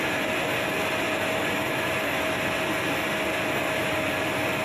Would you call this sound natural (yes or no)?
yes